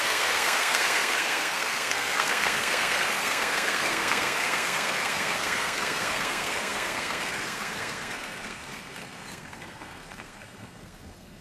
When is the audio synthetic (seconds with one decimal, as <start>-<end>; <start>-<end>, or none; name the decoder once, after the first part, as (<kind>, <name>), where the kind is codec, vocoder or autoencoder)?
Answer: 0.0-11.4 (codec, SNAC)